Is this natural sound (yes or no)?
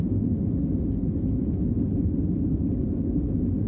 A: yes